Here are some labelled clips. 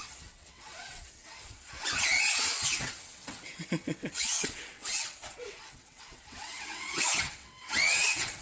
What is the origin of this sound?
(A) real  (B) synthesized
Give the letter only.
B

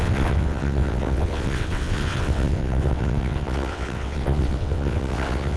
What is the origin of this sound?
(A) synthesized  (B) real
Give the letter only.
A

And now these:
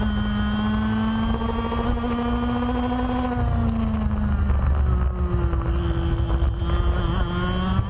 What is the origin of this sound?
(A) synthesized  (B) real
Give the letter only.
B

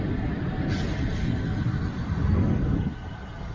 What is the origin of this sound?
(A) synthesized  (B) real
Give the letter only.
B